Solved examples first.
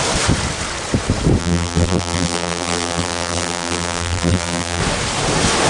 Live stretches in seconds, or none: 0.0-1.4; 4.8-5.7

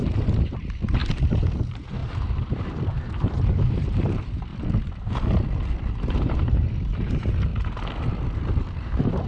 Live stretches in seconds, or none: 4.5-6.1; 7.5-8.6

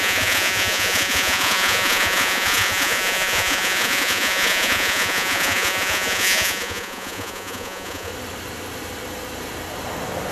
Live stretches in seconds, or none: 8.1-10.3

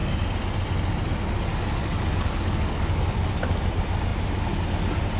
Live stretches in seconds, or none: 0.0-1.8; 3.3-5.2

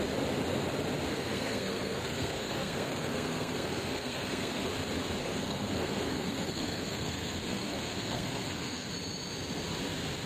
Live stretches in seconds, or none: 0.0-1.1; 4.7-5.2; 8.9-10.3

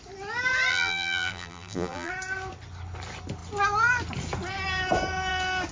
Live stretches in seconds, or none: 0.0-0.7; 2.1-5.7